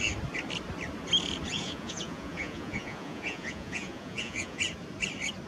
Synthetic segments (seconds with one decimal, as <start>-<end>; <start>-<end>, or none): 1.5-4.6